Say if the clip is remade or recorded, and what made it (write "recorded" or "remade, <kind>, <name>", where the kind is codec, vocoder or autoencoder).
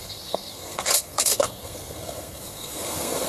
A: remade, codec, SNAC